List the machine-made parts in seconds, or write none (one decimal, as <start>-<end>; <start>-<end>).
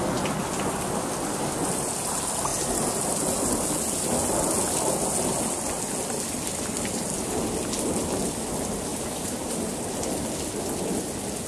8.9-9.6